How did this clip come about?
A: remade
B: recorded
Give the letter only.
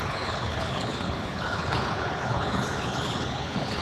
A